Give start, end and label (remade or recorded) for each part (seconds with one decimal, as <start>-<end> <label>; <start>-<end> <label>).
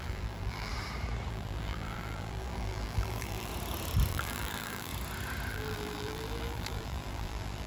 0.0-0.7 remade; 0.7-1.3 recorded; 1.3-3.5 remade; 3.5-4.1 recorded; 4.1-4.9 remade; 4.9-5.5 recorded; 5.5-7.7 remade